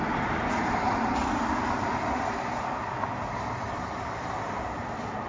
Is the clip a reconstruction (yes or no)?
no